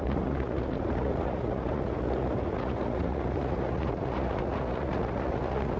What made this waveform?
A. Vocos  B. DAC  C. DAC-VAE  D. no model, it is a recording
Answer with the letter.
A